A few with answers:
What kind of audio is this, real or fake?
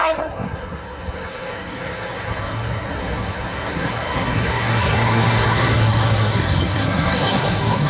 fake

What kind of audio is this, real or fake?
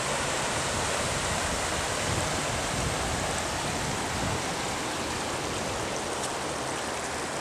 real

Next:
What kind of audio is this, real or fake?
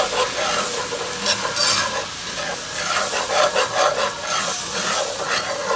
real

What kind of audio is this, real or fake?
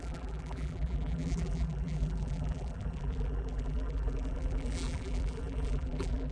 fake